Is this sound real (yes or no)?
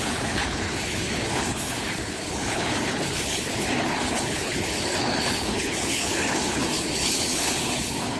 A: no